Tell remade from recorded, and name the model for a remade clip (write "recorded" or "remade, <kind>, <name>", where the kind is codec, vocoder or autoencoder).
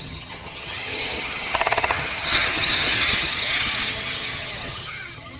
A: remade, vocoder, HiFi-GAN